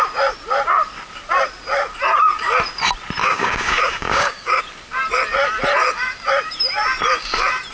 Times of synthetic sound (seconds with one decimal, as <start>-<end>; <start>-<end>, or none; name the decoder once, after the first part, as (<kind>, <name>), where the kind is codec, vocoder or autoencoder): 3.2-4.6 (codec, DAC)